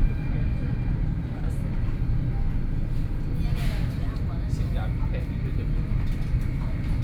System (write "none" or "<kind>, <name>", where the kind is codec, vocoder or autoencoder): none